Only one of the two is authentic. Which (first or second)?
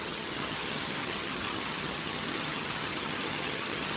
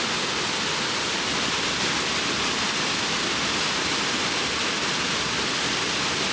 second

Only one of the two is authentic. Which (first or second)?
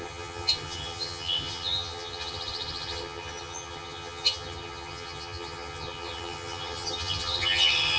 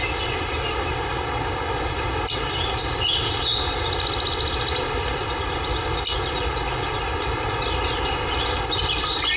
second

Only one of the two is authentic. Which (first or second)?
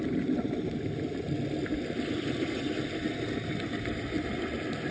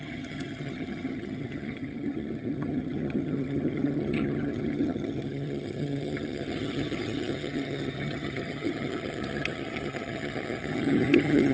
first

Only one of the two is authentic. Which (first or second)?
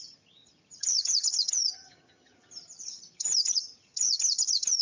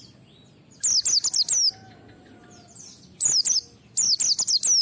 second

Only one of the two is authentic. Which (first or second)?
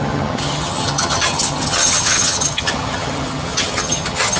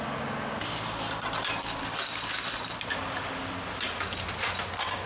second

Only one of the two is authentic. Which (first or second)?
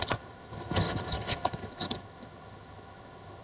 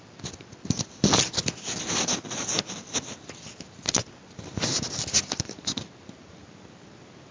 second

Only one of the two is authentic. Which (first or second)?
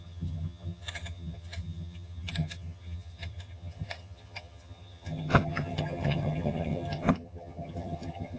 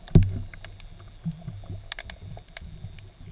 second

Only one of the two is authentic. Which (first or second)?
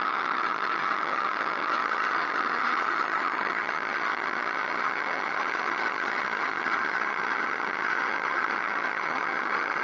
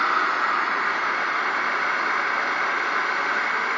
second